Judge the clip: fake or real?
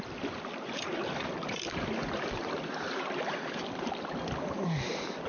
real